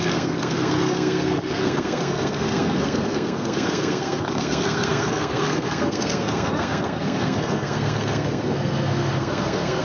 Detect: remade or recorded remade